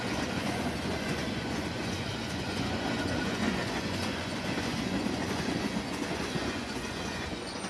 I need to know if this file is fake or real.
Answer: fake